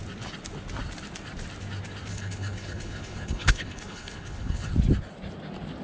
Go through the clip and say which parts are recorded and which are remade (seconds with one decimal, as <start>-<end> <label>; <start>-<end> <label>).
0.0-2.1 recorded; 2.1-4.7 remade; 4.7-5.8 recorded